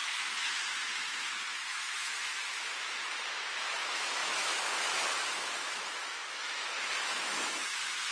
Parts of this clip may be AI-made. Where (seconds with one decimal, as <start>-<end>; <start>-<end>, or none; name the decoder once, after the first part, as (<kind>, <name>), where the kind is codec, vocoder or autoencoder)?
0.0-8.1 (autoencoder, DAC-VAE)